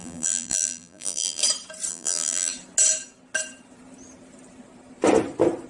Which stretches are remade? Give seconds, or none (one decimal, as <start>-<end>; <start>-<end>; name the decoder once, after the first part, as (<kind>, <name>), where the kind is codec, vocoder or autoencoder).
0.0-1.4 (vocoder, BigVGAN v2); 1.9-2.5